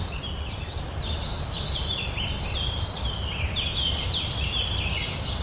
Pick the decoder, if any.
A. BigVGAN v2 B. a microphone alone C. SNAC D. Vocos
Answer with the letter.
A